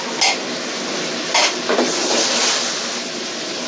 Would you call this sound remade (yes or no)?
no